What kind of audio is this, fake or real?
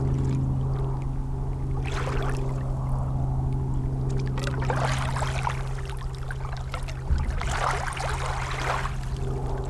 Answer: real